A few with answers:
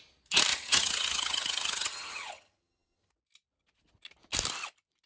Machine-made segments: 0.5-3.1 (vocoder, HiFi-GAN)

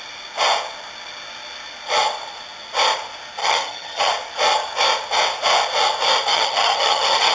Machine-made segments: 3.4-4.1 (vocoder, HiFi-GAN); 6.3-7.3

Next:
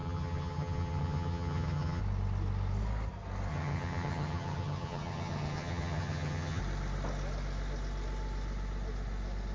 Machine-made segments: 0.0-2.0 (vocoder, HiFi-GAN); 3.5-6.6

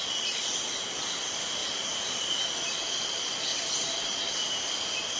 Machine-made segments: none